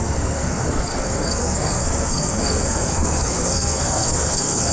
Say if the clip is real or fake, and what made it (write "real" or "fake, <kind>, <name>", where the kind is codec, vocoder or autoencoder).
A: fake, codec, SNAC